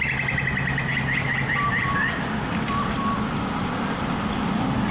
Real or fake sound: real